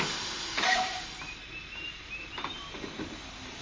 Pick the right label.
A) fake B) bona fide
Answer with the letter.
B